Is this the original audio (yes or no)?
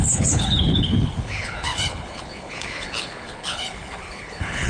no